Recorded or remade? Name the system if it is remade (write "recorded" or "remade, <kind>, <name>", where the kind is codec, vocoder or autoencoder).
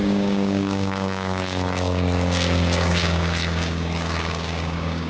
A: remade, codec, DAC